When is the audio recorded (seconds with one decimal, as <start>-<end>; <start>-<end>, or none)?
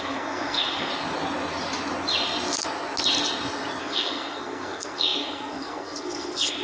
0.9-3.8